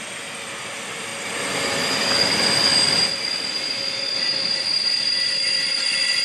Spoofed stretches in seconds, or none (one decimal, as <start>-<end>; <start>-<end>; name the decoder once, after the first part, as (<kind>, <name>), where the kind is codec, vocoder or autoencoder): none